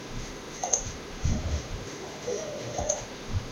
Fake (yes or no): yes